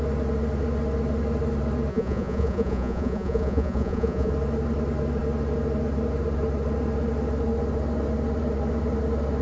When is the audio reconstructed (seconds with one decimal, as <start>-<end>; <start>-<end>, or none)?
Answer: 1.9-4.3